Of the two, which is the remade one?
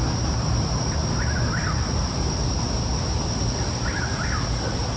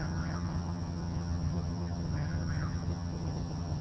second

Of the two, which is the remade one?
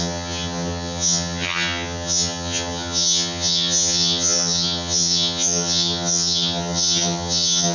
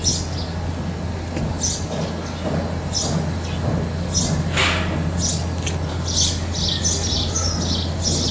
first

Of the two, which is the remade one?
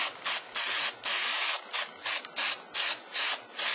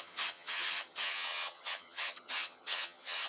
second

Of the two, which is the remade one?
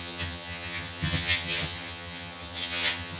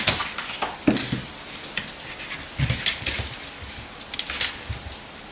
first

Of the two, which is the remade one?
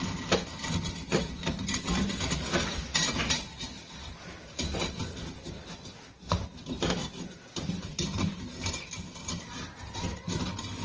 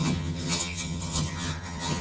second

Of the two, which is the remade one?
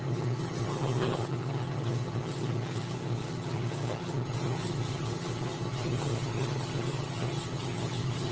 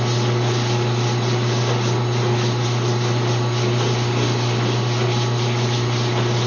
first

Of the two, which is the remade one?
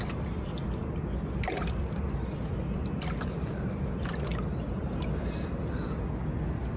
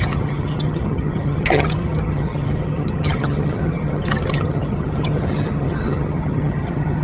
second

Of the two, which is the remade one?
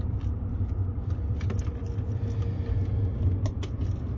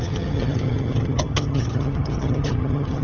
second